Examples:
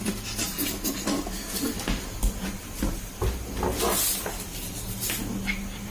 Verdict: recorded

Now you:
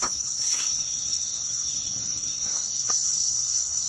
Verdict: remade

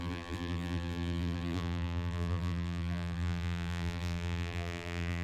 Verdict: remade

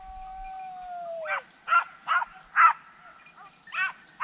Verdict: recorded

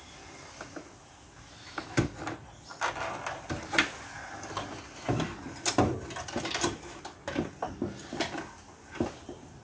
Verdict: recorded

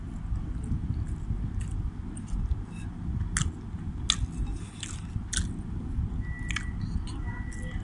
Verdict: recorded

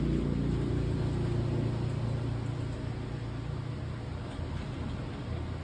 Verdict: recorded